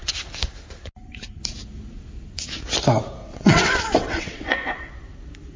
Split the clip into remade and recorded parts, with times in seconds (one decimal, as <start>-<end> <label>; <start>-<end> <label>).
0.0-3.2 recorded; 3.2-4.9 remade; 4.9-5.6 recorded